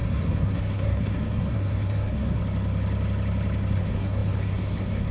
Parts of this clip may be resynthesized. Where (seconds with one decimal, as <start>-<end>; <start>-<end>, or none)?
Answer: 0.0-2.4; 3.8-5.1

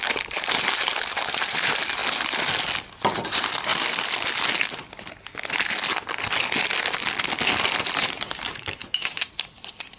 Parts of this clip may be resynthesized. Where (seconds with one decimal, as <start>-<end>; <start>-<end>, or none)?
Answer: 0.0-2.0; 3.1-3.7; 7.8-10.0